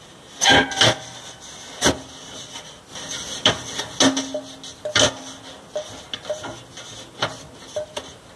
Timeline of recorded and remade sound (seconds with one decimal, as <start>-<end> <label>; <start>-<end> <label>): 0.0-8.4 recorded